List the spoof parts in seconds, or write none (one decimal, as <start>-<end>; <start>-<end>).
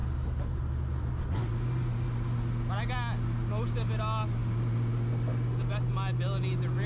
none